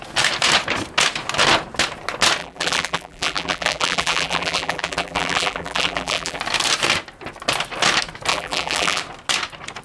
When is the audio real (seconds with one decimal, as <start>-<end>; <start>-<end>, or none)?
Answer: 0.0-2.4; 6.4-8.3; 9.0-9.8